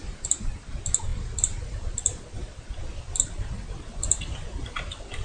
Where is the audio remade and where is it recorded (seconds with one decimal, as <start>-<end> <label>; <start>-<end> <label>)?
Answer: 0.0-5.2 recorded